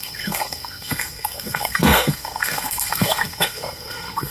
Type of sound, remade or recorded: remade